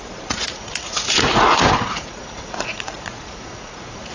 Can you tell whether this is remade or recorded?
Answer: remade